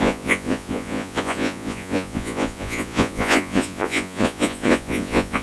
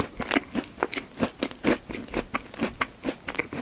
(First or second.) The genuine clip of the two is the second